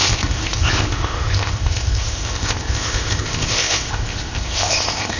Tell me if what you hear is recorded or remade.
remade